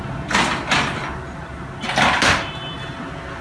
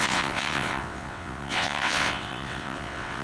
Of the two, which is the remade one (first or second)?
second